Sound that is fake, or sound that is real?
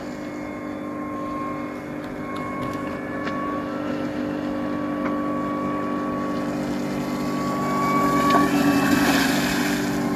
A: real